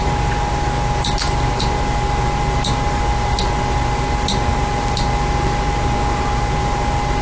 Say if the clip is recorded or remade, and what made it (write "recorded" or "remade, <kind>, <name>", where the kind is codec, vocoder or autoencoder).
recorded